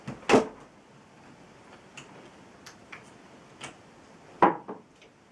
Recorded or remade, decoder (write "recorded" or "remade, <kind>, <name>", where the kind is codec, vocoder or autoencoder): recorded